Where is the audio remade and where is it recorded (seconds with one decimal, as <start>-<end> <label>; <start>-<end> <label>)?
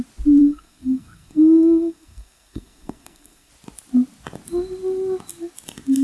0.0-0.4 recorded; 0.4-3.5 remade; 3.5-6.0 recorded